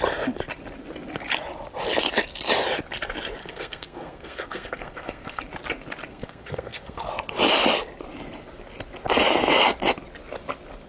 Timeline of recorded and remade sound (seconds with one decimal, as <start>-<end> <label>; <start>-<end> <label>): 0.0-3.4 recorded; 3.4-5.4 remade; 5.4-6.1 recorded; 6.1-7.1 remade; 7.1-10.9 recorded